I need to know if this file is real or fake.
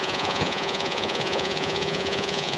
fake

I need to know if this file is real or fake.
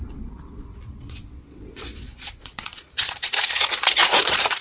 fake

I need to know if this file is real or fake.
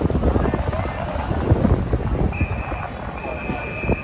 real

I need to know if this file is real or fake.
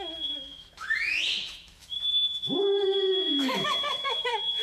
fake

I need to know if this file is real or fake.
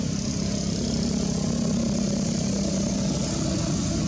real